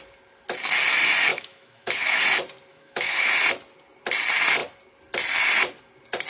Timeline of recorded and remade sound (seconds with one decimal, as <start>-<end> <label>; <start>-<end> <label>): 0.0-1.3 recorded; 1.3-2.2 remade; 2.2-2.7 recorded; 2.7-3.3 remade; 3.3-6.3 recorded